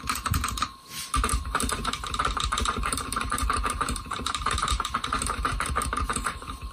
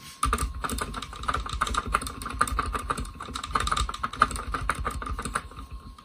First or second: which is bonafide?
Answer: second